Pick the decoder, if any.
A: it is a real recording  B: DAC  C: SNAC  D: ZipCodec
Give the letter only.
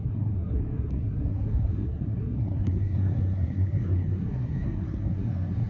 C